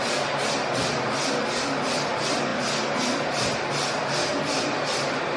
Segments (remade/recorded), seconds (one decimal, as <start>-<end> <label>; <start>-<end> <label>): 0.0-5.4 recorded